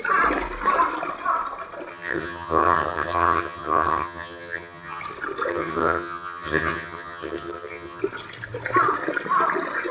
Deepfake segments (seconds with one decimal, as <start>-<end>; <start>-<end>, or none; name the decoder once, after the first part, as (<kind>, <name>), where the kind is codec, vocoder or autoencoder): 1.9-5.0 (vocoder, HiFi-GAN); 5.5-8.0